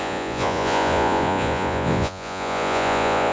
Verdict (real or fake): fake